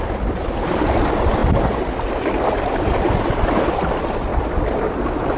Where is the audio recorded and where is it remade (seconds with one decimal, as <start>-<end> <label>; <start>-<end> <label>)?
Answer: 0.0-5.4 recorded